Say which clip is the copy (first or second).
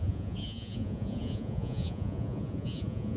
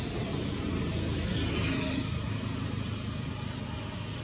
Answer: first